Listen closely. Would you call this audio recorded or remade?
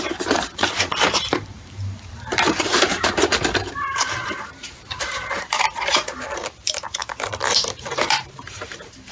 remade